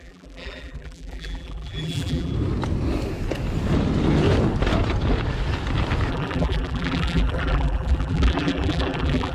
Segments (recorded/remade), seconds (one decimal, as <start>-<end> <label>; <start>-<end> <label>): 0.0-2.3 remade; 2.3-6.1 recorded; 6.1-9.3 remade